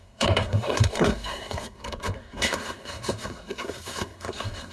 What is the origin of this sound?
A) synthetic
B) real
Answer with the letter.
A